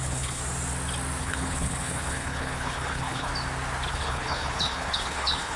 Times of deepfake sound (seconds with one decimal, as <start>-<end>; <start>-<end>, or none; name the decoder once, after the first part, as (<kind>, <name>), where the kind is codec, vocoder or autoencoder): 0.0-0.4 (codec, HILCodec); 1.2-3.3; 3.9-5.6